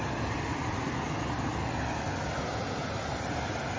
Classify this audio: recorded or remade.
recorded